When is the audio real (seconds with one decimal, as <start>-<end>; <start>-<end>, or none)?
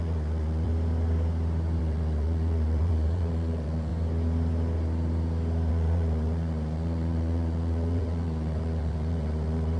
0.7-1.8; 3.9-5.7